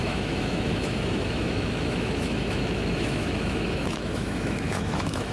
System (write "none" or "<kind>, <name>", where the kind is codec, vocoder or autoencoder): autoencoder, DAC-VAE